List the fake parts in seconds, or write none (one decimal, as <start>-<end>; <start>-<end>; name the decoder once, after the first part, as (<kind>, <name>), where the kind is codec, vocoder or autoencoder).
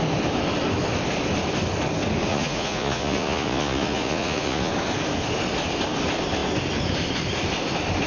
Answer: 2.3-4.7 (vocoder, Vocos)